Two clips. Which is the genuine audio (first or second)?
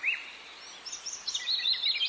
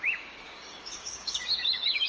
first